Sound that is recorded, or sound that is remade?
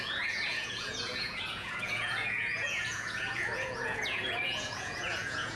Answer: remade